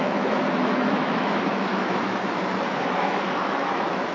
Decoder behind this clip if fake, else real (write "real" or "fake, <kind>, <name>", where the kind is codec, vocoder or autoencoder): fake, autoencoder, DAC-VAE